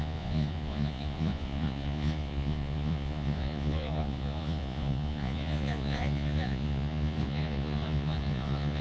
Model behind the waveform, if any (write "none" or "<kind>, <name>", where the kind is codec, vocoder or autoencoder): vocoder, Vocos